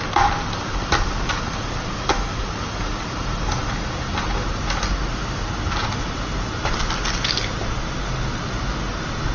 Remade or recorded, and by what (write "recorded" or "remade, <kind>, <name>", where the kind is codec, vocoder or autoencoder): recorded